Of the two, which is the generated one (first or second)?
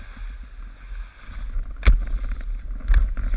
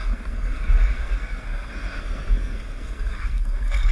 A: second